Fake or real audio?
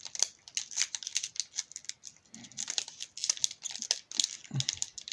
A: real